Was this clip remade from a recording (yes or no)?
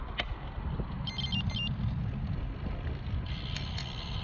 no